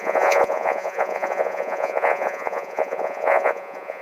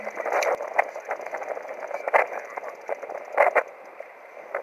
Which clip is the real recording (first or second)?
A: second